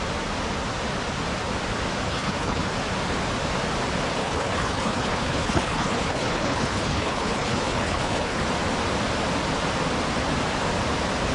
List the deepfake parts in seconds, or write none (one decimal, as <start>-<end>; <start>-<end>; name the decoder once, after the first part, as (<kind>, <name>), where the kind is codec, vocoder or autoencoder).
2.1-2.7 (codec, HILCodec); 4.2-8.4